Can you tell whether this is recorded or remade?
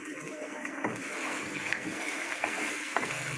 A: remade